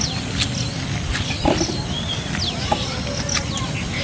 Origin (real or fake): real